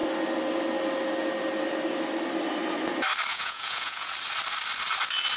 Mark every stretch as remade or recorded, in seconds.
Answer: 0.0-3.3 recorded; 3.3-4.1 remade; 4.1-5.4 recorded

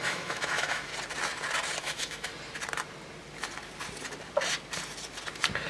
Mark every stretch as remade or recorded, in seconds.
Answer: 0.0-0.9 remade; 0.9-1.8 recorded; 1.8-2.3 remade; 2.3-5.7 recorded